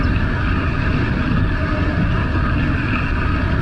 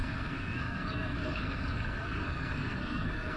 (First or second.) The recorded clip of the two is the first